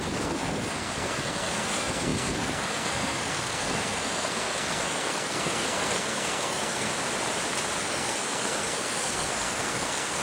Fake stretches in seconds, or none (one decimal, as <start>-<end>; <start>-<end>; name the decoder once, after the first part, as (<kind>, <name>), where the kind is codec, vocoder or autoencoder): 0.0-6.9 (codec, SNAC); 7.8-10.2